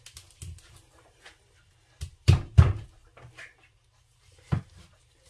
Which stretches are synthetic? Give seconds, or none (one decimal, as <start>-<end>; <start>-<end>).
none